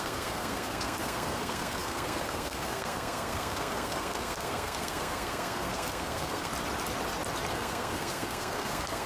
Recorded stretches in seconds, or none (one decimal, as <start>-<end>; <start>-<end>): 6.5-7.5